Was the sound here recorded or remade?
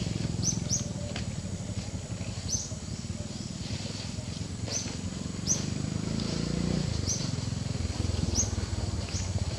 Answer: recorded